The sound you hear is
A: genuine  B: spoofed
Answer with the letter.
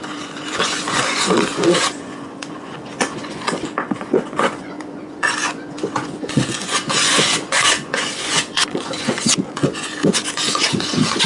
B